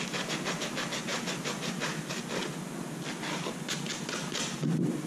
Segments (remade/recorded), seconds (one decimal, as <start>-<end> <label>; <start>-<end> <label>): 0.0-5.1 recorded